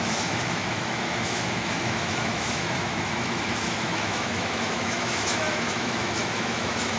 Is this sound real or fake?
fake